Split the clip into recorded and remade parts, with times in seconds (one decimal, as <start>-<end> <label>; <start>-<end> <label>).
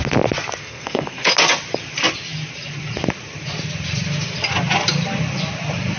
0.0-0.6 recorded; 0.6-1.3 remade; 1.3-6.0 recorded